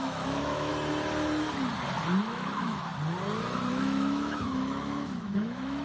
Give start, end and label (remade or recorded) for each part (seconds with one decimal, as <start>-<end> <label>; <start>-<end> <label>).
0.0-0.7 remade; 0.7-2.2 recorded; 2.2-2.9 remade; 2.9-3.7 recorded; 3.7-5.8 remade